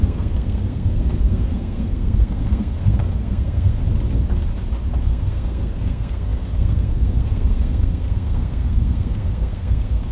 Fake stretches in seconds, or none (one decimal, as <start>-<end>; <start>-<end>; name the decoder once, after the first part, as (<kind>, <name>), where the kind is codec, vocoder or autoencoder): 0.0-3.8 (codec, SNAC); 5.0-10.1

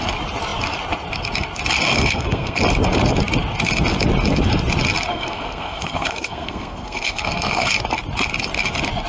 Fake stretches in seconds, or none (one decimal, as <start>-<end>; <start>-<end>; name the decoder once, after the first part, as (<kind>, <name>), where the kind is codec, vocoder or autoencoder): 1.9-2.6 (codec, SNAC); 5.1-7.7

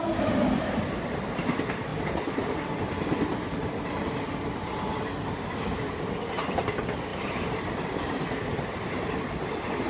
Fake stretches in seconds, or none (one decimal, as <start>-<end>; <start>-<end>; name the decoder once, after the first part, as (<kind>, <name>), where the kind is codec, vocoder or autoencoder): 1.9-2.6 (vocoder, BigVGAN v2); 3.3-4.1; 7.1-8.1

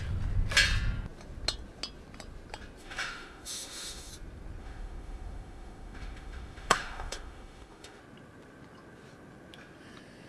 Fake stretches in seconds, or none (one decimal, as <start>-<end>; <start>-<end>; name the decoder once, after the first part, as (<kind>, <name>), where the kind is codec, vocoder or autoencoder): 2.8-4.1 (autoencoder, DAC-VAE); 4.6-8.0

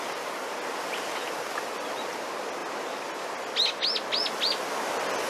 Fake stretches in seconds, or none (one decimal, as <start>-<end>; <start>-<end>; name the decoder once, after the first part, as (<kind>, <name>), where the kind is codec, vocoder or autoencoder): none

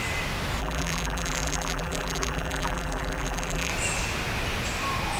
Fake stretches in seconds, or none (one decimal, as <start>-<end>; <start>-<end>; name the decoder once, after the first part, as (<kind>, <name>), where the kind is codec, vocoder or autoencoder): 0.6-3.7 (vocoder, BigVGAN v2)

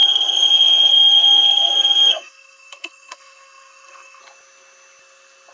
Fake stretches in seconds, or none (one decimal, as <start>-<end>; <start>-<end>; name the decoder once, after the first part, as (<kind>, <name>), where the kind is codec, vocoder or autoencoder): 0.0-0.5 (codec, SNAC); 0.9-4.2